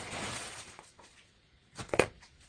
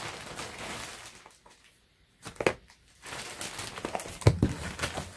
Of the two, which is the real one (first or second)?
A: second